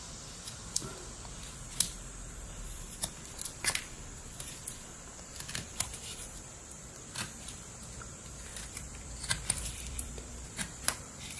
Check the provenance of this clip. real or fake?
fake